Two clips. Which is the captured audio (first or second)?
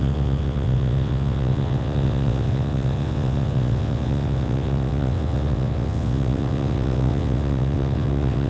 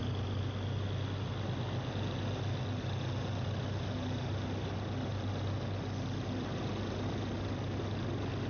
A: second